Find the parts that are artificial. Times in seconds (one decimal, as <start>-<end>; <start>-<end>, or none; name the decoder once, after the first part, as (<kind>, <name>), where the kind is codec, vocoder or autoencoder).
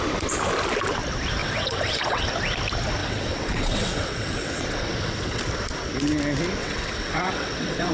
1.4-2.3 (vocoder, WaveNeXt); 3.0-5.4; 6.6-7.9